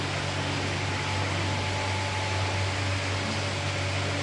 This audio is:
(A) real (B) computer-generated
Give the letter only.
A